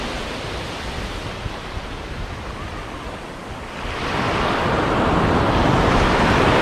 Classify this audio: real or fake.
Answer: real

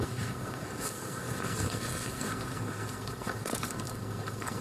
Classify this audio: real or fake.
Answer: fake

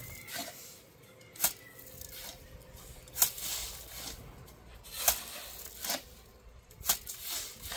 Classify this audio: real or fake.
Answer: real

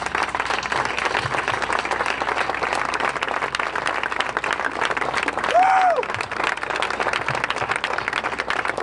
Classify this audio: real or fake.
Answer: real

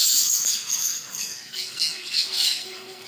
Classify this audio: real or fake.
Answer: fake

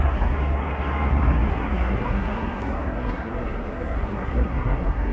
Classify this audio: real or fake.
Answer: fake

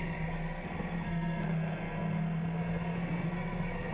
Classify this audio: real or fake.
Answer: fake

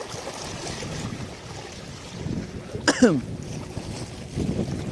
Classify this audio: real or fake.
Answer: real